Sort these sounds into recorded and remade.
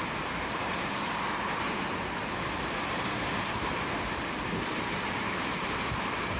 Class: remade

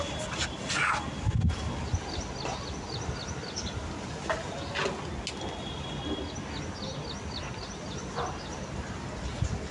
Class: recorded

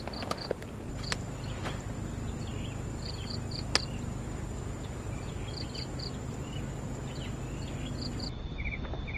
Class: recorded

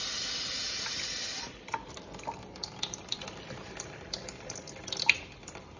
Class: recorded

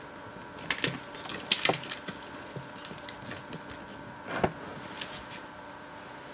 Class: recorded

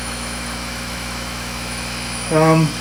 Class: remade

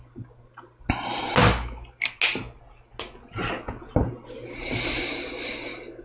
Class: recorded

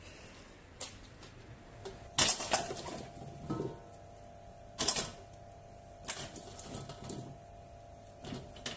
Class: recorded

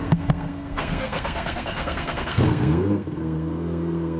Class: remade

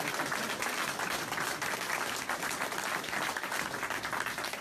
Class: recorded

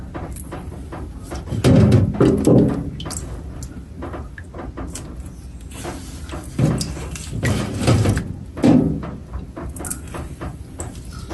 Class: recorded